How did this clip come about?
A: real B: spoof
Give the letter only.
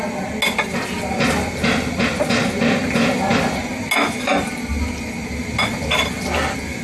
A